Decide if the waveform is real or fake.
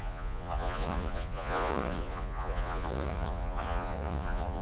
fake